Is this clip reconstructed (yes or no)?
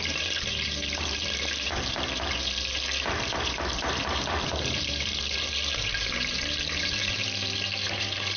yes